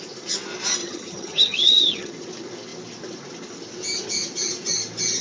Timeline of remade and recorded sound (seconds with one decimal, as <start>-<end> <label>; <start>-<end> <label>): 0.0-0.8 recorded; 0.8-2.1 remade; 2.1-5.2 recorded